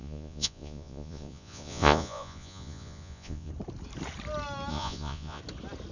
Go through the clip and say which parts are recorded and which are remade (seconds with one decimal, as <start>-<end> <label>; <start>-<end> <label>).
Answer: 0.0-3.5 remade; 3.5-4.7 recorded; 4.7-5.4 remade; 5.4-5.9 recorded